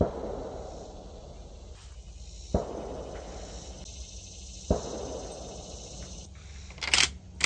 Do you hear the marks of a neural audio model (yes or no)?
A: no